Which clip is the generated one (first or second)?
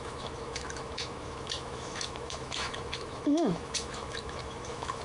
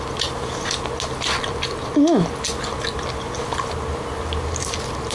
first